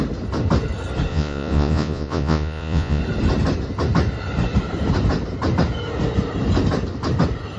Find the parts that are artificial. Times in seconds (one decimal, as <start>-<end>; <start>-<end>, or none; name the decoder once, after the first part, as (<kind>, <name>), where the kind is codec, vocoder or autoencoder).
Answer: 1.1-3.0 (vocoder, Vocos)